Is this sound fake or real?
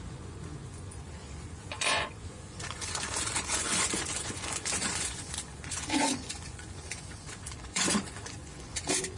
fake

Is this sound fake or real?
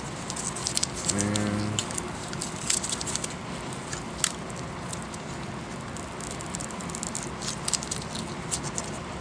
real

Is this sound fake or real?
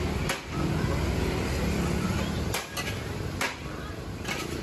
real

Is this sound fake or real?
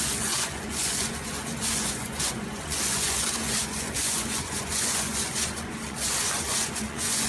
fake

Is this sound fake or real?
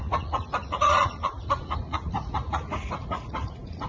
fake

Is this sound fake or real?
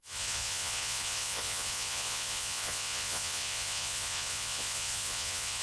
fake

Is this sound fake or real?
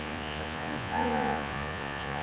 fake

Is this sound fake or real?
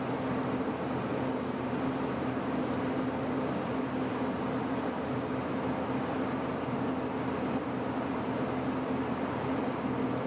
real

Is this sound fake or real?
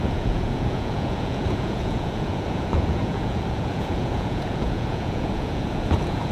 fake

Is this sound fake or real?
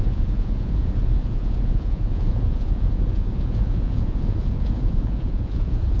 fake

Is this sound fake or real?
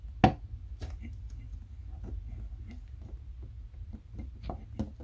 real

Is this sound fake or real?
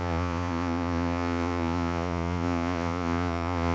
fake